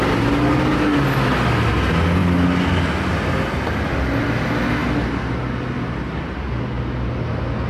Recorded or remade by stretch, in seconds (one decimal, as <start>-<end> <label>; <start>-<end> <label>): 0.0-7.7 recorded